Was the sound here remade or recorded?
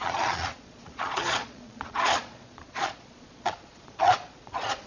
remade